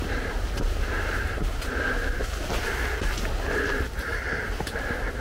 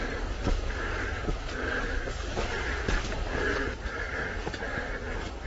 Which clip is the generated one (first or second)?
second